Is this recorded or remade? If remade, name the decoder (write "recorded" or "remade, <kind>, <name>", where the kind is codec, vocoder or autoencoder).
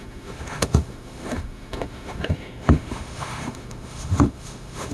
remade, autoencoder, DAC-VAE